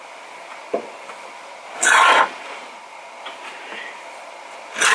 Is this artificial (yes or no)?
no